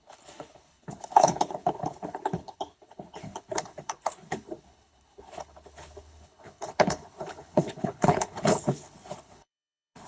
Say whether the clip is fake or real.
fake